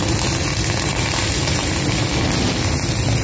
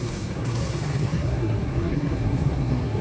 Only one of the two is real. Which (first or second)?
first